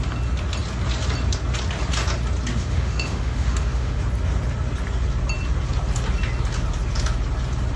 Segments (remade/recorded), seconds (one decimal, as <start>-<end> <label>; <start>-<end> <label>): 0.0-2.5 recorded; 2.5-4.0 remade; 4.0-7.8 recorded